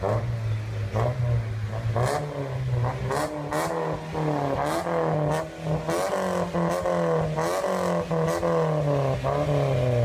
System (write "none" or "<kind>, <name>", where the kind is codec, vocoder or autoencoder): none